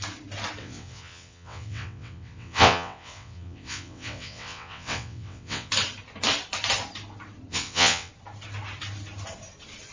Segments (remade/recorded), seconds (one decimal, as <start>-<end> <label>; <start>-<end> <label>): 0.0-0.6 recorded; 0.6-5.7 remade; 5.7-7.5 recorded; 7.5-8.1 remade; 8.1-9.9 recorded